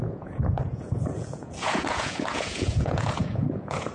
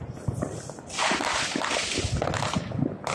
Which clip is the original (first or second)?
second